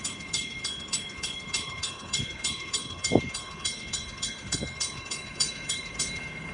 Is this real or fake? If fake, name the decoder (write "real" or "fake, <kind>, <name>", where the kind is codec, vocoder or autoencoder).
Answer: fake, codec, HILCodec